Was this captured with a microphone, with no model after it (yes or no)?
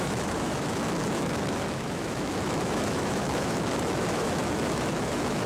no